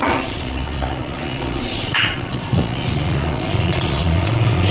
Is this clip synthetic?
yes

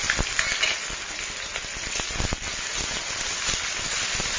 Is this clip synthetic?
no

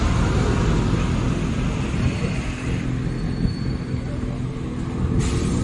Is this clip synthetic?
no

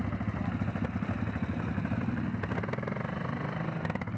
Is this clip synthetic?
no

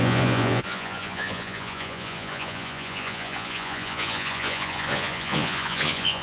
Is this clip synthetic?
yes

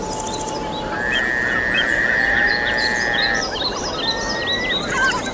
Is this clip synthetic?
no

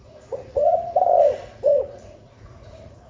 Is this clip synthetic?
yes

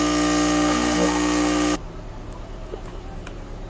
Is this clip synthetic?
no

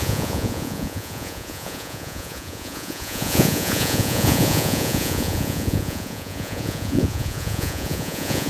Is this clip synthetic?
yes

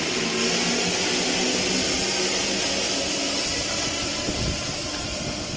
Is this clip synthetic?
no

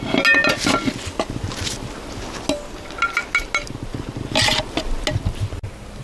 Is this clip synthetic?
no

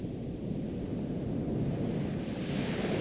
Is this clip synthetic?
no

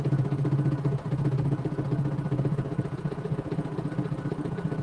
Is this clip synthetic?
yes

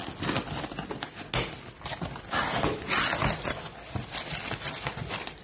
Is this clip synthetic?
no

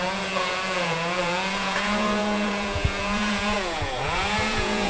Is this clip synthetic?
yes